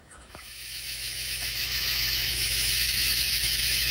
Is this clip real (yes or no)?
no